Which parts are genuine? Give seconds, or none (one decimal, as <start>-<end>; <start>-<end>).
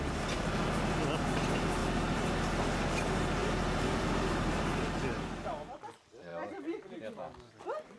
0.0-1.8; 2.8-3.4; 4.6-8.0